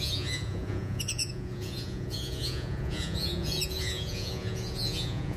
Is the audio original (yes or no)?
no